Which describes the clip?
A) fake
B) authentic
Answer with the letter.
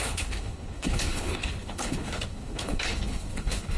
A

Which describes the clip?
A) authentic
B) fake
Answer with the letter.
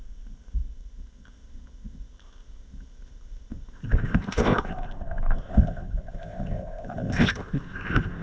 B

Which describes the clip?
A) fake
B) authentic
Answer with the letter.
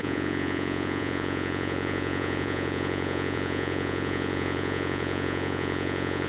A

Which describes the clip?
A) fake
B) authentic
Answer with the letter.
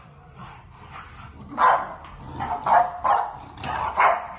B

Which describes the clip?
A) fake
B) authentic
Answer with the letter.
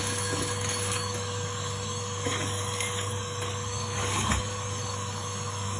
A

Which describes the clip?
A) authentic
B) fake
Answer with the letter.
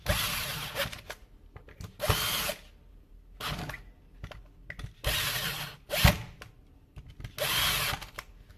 A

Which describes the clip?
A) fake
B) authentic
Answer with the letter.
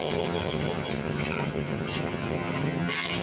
A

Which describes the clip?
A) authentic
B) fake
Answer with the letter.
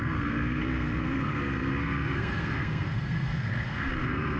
B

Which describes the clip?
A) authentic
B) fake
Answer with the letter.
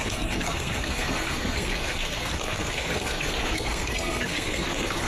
B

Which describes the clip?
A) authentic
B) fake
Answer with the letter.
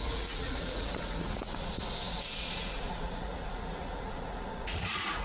B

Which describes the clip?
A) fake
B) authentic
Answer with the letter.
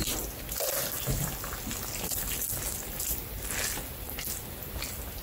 B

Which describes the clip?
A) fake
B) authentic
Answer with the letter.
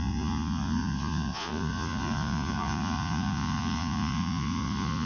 A